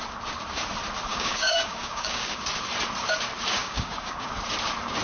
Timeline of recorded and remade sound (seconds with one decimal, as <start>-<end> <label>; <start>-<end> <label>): 0.0-1.1 recorded; 1.1-2.4 remade; 2.4-3.6 recorded; 3.6-4.3 remade; 4.3-5.0 recorded